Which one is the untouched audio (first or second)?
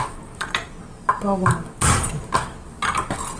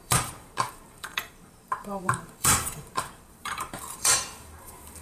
first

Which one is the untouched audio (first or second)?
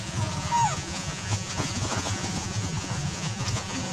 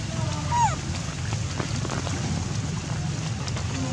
second